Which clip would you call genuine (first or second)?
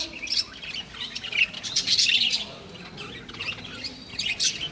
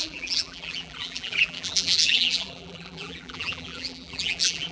first